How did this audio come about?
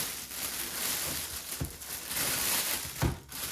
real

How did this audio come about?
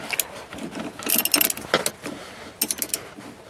real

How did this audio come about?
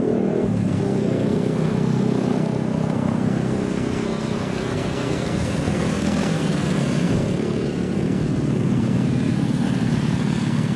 fake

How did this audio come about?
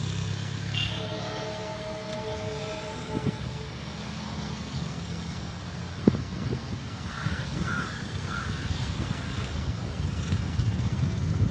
fake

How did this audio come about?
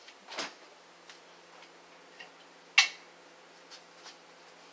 real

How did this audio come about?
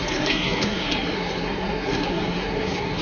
fake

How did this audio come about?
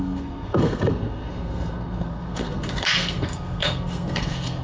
fake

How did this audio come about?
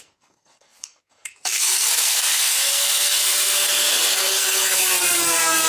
fake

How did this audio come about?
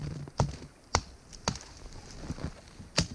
real